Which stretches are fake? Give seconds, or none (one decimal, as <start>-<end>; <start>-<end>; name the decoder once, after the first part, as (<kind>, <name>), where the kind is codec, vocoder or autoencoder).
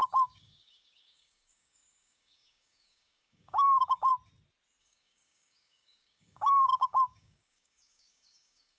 0.0-4.1 (codec, DAC); 4.8-8.8